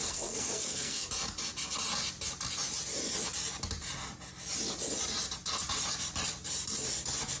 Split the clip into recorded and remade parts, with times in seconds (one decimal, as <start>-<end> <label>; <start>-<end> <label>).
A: 0.0-1.1 remade; 1.1-7.4 recorded